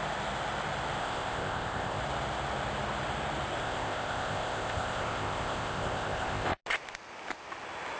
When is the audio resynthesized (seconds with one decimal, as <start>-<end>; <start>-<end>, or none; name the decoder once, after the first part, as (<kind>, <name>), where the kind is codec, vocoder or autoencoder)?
1.0-2.0 (codec, ZipCodec); 3.6-6.6